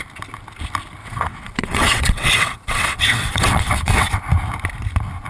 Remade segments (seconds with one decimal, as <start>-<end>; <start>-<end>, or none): 1.0-4.2